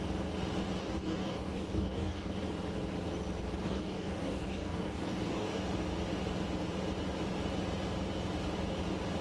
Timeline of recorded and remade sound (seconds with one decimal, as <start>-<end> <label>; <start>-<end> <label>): 0.0-0.8 recorded; 0.8-2.3 remade; 2.3-3.6 recorded; 3.6-5.6 remade; 5.6-9.2 recorded